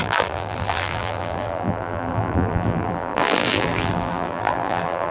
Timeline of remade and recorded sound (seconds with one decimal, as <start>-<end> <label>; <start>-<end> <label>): 0.0-5.1 remade